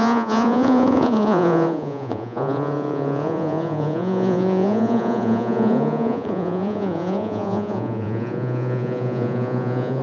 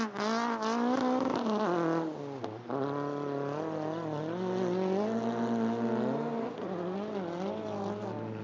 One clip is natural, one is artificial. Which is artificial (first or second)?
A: first